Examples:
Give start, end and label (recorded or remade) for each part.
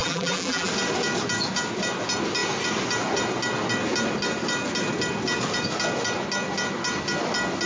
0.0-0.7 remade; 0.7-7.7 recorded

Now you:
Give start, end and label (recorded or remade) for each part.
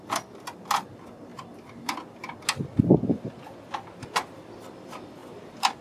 0.0-5.2 recorded; 5.2-5.8 remade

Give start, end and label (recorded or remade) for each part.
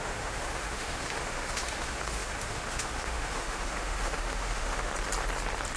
0.0-4.9 remade; 4.9-5.8 recorded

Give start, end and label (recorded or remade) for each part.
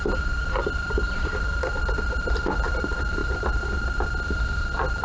0.0-3.2 recorded; 3.2-4.2 remade; 4.2-5.0 recorded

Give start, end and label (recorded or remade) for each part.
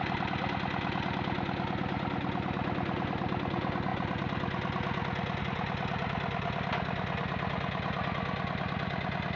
0.0-9.4 recorded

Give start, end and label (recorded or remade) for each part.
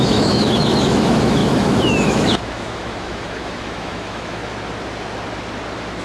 0.0-4.4 remade; 4.4-6.0 recorded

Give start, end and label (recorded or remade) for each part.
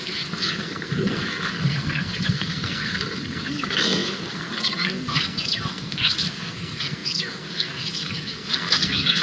0.0-9.2 remade